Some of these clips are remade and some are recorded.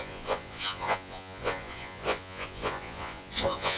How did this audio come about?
remade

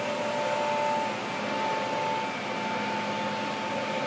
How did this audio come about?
recorded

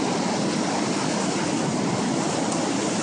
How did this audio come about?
recorded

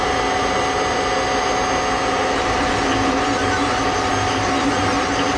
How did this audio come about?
recorded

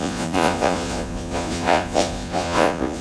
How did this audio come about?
remade